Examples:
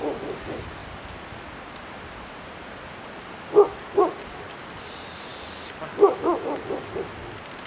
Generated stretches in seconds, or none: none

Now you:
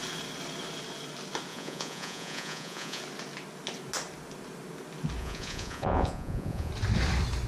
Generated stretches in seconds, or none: 1.5-3.0 (vocoder, Vocos); 5.2-6.7

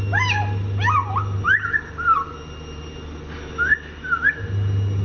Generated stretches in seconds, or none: none